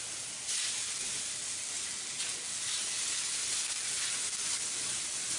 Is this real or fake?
real